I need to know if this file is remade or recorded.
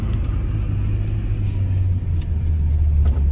recorded